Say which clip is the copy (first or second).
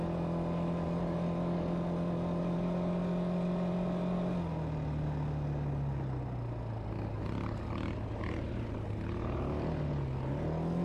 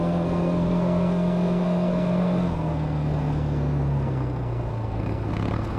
second